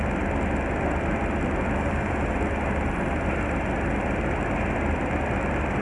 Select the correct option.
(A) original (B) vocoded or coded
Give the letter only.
A